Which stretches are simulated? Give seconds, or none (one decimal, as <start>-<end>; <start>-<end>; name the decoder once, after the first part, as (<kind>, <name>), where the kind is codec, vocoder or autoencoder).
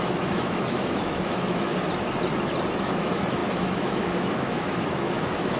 0.0-1.7 (autoencoder, DAC-VAE); 2.8-5.6